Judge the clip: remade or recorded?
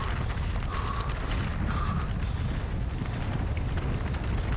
recorded